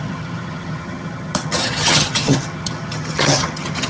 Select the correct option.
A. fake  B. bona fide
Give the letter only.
A